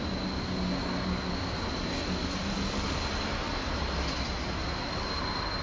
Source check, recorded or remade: recorded